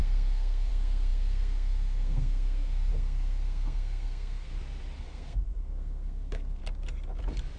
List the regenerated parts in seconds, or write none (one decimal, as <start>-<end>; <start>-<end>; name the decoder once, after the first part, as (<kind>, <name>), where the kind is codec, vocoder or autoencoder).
0.0-4.5 (codec, SNAC); 5.0-6.6